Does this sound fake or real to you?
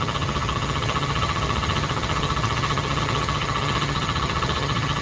fake